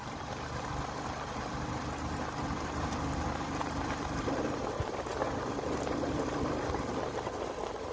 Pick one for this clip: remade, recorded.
recorded